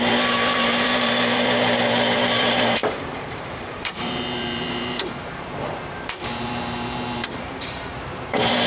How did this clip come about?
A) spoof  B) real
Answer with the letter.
A